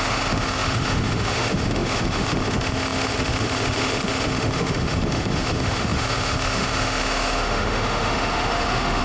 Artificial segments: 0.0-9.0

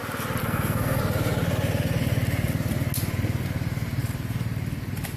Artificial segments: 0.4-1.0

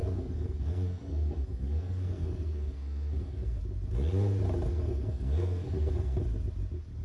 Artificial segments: 0.0-3.6; 4.7-6.2